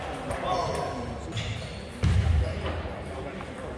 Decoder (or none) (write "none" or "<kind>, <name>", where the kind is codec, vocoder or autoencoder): none